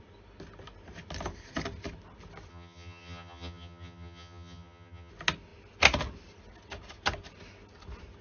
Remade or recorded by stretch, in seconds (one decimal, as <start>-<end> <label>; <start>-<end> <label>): 0.0-2.5 recorded; 2.5-5.1 remade; 5.1-8.2 recorded